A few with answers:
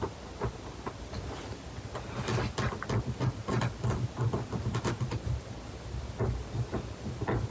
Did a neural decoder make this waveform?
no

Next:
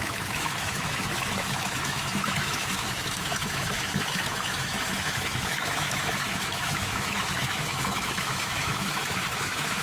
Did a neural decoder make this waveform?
yes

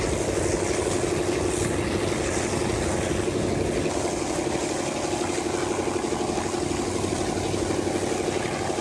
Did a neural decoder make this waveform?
no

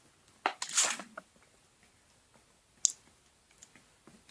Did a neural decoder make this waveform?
no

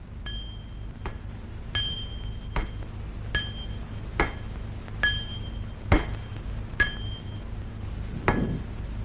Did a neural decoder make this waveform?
no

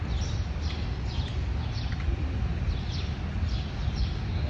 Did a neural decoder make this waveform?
no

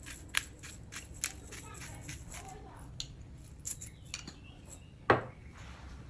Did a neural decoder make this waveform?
no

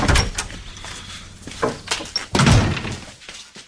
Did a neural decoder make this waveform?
no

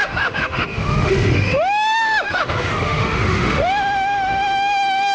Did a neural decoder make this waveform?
yes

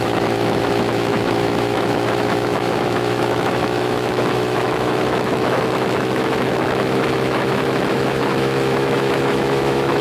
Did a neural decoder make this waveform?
yes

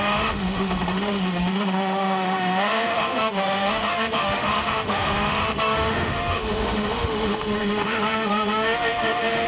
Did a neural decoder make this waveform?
yes